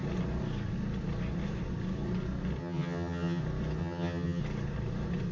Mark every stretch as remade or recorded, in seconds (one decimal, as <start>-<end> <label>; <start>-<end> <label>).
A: 0.0-2.6 recorded; 2.6-3.4 remade; 3.4-3.8 recorded; 3.8-4.4 remade; 4.4-5.3 recorded